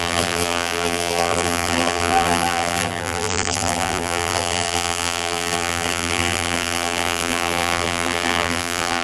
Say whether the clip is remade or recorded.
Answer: remade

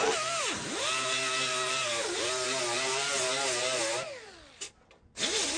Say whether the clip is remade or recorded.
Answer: remade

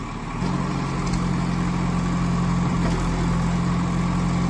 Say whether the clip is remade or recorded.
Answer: recorded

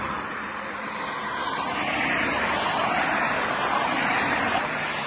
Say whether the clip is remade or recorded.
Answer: remade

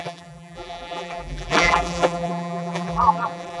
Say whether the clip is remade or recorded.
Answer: remade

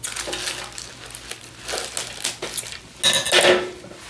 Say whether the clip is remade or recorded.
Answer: recorded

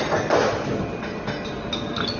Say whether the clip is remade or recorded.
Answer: recorded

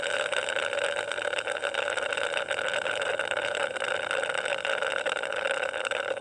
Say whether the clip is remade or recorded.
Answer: recorded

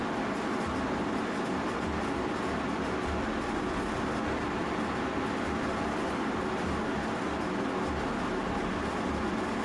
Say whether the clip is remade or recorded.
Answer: recorded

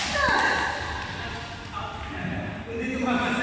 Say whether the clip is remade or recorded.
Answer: recorded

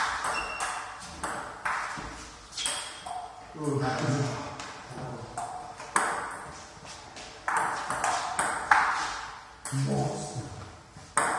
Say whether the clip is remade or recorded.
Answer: recorded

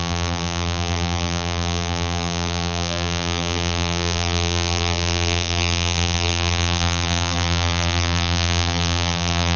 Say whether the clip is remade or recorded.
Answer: remade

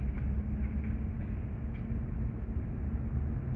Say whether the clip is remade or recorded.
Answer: recorded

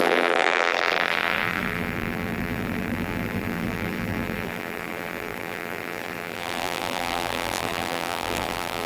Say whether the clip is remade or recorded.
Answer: remade